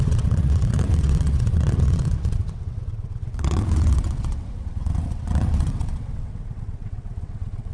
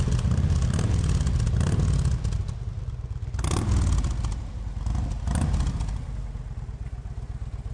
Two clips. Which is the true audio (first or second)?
second